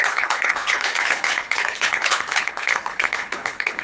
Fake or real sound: fake